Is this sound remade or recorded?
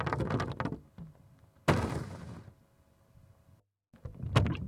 recorded